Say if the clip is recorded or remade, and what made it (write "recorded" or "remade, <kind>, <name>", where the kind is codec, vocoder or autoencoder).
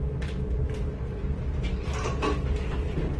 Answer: recorded